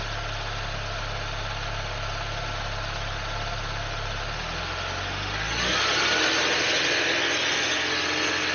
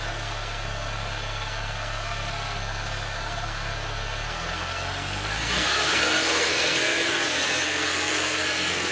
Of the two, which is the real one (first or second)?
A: first